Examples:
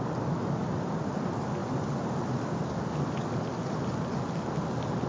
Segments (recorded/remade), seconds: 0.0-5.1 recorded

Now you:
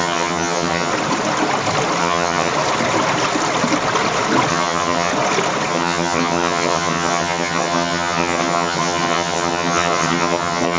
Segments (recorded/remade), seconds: 0.0-0.9 remade; 0.9-2.0 recorded; 2.0-2.5 remade; 2.5-4.5 recorded; 4.5-5.1 remade; 5.1-5.7 recorded; 5.7-10.8 remade

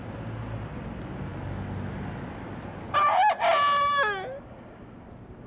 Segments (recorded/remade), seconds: 0.0-5.5 recorded